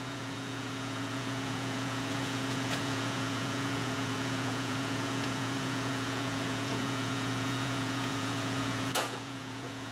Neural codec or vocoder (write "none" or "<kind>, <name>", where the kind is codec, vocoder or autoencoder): vocoder, Vocos